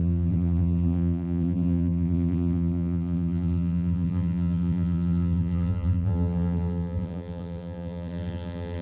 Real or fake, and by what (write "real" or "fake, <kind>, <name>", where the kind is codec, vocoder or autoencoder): fake, vocoder, BigVGAN v2